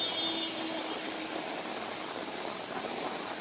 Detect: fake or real real